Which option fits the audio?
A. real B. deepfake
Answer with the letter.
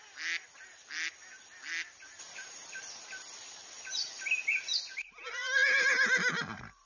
A